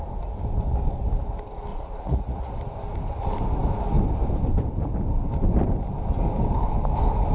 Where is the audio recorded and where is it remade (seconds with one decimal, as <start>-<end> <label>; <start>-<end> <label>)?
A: 0.0-1.7 recorded; 1.7-2.5 remade; 2.5-7.3 recorded